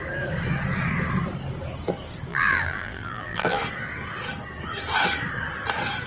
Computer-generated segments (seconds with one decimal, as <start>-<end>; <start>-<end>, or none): 2.3-3.6